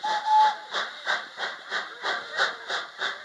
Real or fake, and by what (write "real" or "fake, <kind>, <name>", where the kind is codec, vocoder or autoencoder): fake, vocoder, BigVGAN v2